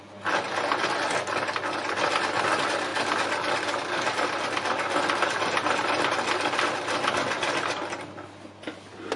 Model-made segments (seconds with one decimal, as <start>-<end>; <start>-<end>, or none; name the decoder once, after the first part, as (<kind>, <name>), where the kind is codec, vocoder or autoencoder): none